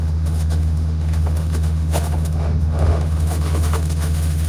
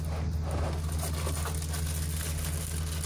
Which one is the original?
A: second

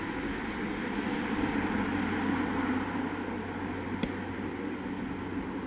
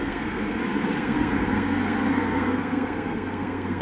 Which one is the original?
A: first